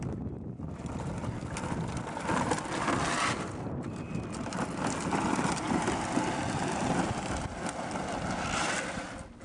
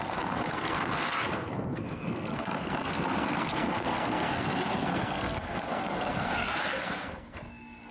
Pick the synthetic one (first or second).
second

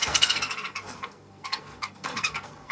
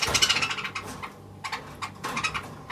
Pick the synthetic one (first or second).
first